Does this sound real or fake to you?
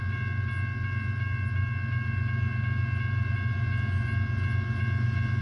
real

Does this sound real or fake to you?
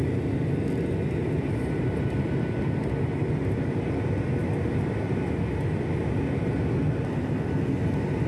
real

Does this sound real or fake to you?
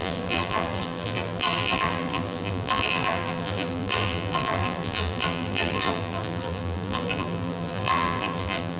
fake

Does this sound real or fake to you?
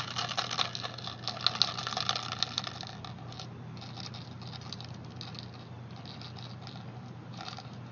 real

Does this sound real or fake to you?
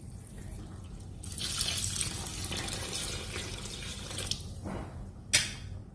real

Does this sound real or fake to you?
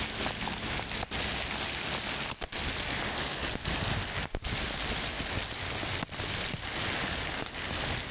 real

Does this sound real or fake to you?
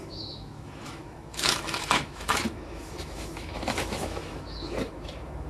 fake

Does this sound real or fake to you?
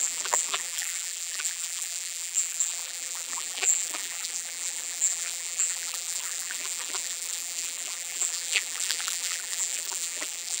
fake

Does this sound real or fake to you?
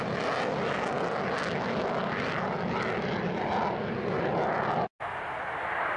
real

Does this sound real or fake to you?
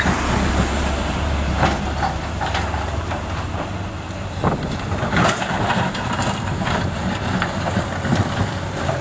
fake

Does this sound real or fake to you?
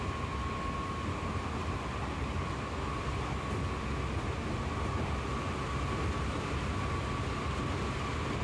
real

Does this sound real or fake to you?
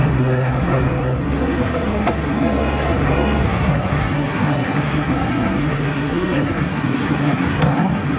fake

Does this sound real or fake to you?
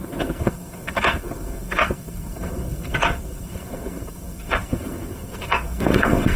fake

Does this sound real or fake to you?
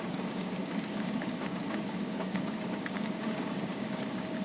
fake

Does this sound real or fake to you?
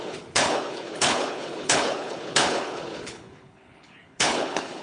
fake